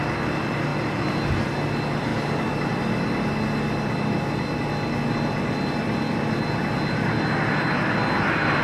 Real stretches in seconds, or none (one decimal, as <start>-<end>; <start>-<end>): 0.0-8.6